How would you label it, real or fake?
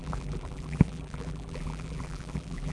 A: fake